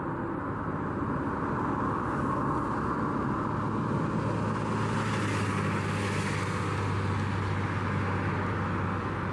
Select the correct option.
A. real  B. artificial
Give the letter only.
A